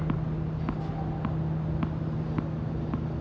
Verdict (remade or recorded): recorded